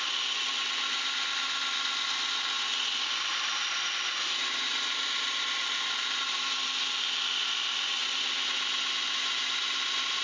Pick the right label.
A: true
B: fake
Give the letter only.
A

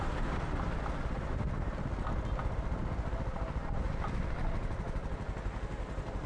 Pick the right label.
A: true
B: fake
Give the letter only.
A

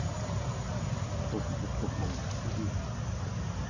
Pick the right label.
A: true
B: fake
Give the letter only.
A